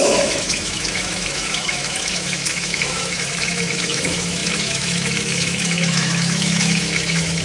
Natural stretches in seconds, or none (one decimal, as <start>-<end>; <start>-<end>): none